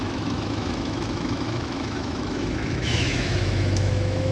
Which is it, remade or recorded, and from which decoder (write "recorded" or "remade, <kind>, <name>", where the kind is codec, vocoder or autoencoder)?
remade, autoencoder, DAC-VAE